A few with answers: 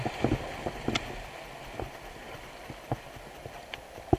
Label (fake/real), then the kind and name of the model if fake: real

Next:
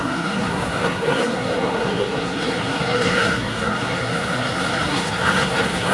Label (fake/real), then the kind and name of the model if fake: fake, codec, SNAC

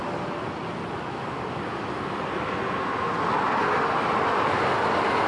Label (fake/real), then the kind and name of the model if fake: real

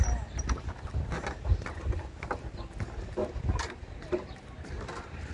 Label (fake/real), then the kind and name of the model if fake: real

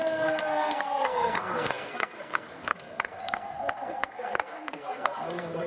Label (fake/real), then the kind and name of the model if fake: fake, codec, SNAC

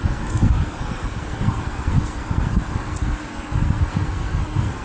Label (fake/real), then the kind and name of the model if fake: fake, codec, SNAC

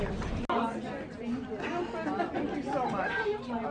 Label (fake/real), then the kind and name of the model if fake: real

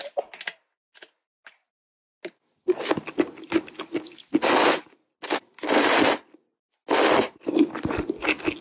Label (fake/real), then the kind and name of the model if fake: real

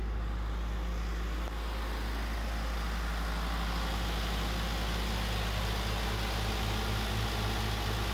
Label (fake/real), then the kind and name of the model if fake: real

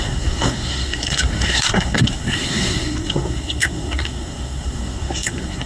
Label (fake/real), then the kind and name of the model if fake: fake, codec, SNAC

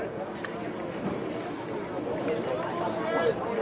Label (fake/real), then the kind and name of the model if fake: real